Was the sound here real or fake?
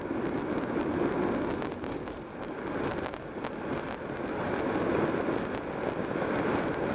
real